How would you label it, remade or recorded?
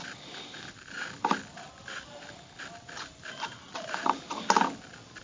recorded